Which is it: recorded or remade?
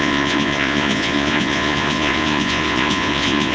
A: remade